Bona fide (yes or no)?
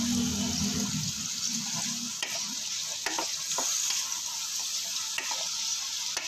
yes